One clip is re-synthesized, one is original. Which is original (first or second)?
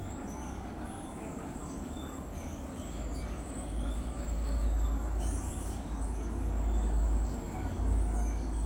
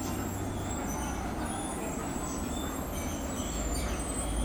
second